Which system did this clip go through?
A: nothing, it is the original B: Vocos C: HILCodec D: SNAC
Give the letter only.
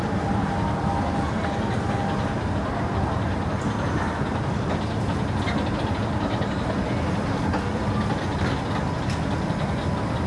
A